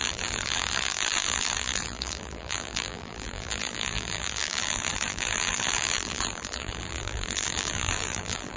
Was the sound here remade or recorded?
remade